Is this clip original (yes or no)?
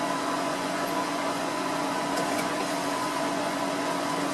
no